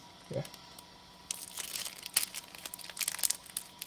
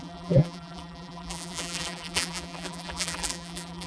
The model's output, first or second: second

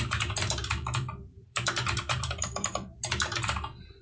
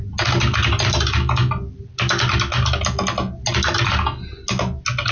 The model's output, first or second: first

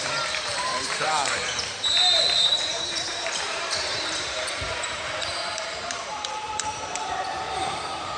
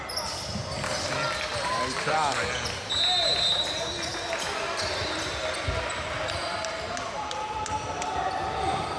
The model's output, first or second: first